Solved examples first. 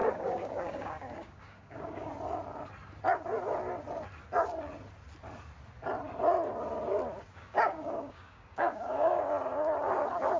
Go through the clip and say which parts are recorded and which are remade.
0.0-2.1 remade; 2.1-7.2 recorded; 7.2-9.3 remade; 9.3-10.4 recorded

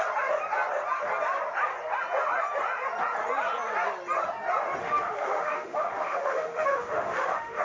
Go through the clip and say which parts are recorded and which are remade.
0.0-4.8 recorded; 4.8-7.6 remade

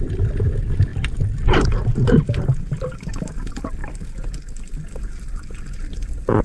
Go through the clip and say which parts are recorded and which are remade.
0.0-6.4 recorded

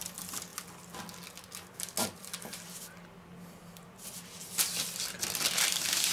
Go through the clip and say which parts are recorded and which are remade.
0.0-6.1 recorded

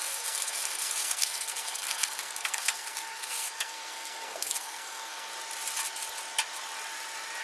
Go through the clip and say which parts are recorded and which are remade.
0.0-5.3 remade; 5.3-7.4 recorded

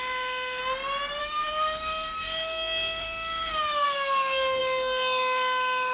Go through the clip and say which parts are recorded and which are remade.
0.0-0.6 remade; 0.6-1.2 recorded; 1.2-5.9 remade

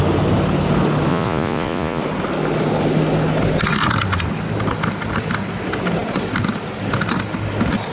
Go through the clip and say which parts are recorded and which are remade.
0.0-1.1 recorded; 1.1-2.0 remade; 2.0-7.9 recorded

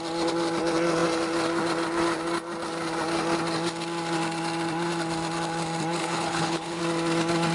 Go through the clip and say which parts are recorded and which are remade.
0.0-6.0 recorded; 6.0-6.8 remade; 6.8-7.5 recorded